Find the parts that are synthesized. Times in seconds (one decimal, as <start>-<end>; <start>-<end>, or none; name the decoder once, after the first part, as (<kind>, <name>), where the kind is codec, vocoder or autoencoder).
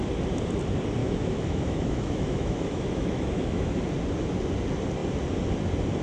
1.0-3.8 (autoencoder, DAC-VAE)